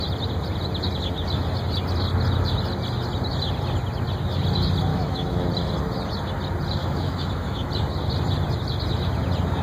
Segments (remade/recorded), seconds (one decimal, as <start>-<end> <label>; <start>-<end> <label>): 0.0-4.9 recorded; 4.9-5.5 remade; 5.5-6.8 recorded; 6.8-7.7 remade; 7.7-9.6 recorded